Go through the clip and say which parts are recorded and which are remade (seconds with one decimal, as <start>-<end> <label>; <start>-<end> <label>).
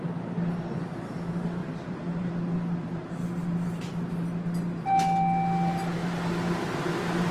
0.0-1.6 recorded; 1.6-2.3 remade; 2.3-3.0 recorded; 3.0-3.9 remade; 3.9-6.0 recorded; 6.0-7.3 remade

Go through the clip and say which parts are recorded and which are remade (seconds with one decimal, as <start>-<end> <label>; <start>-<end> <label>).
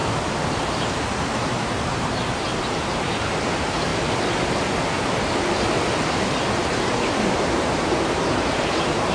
0.0-0.5 recorded; 0.5-3.9 remade; 3.9-6.6 recorded; 6.6-9.1 remade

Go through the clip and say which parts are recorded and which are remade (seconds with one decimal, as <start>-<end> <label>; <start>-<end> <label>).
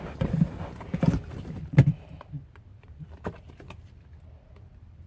0.0-2.7 recorded; 2.7-3.5 remade; 3.5-5.1 recorded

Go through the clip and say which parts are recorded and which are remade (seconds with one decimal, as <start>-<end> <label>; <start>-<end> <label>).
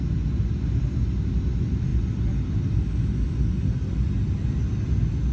0.0-5.3 recorded